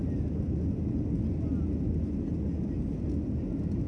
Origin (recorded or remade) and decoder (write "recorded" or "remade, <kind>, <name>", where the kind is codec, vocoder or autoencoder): recorded